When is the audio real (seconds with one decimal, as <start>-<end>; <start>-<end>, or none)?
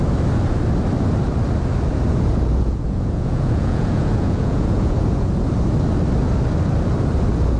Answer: 0.0-2.5; 5.3-7.6